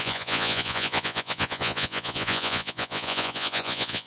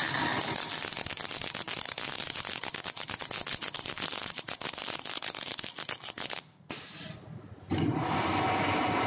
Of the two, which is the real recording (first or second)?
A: second